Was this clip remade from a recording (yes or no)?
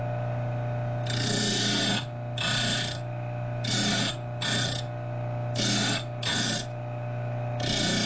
no